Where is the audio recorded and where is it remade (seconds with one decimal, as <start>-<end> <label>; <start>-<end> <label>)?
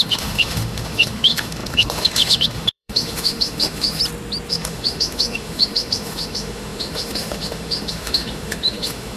0.0-4.0 remade; 4.0-4.5 recorded; 4.5-9.2 remade